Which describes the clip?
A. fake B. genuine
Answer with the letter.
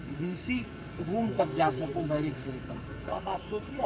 A